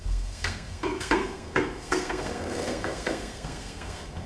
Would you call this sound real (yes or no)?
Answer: no